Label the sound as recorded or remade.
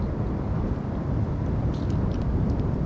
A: remade